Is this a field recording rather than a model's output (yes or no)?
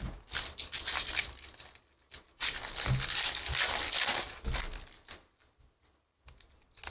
yes